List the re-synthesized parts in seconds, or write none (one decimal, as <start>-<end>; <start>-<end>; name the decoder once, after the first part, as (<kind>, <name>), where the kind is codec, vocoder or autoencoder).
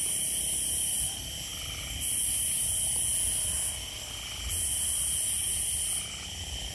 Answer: none